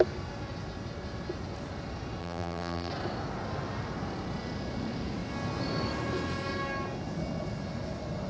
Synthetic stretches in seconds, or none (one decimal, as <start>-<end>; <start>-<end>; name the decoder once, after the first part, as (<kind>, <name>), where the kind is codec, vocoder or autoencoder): 2.2-2.9 (vocoder, BigVGAN v2)